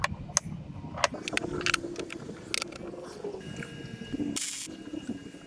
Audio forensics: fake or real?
real